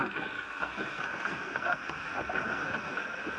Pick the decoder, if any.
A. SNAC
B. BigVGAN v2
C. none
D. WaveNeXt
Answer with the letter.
A